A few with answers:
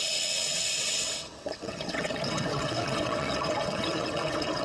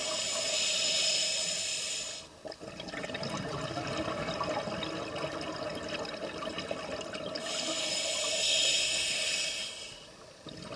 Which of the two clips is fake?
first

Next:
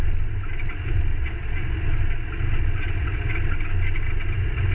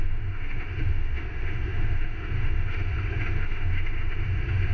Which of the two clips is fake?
second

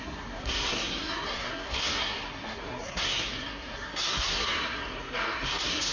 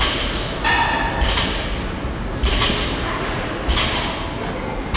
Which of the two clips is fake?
first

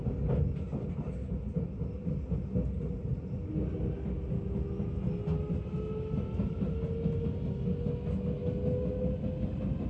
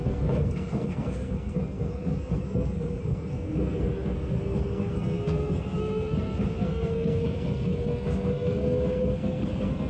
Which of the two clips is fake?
second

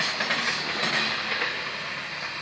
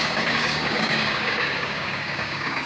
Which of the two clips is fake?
second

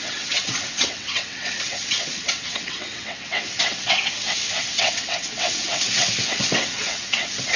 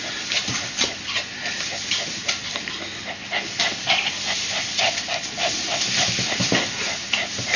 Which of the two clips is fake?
first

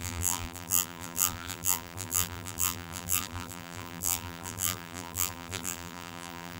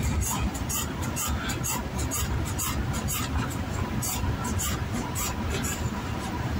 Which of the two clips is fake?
first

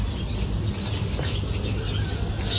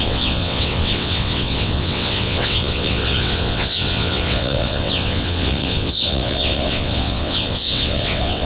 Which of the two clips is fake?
second